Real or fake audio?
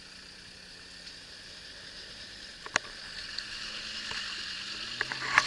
real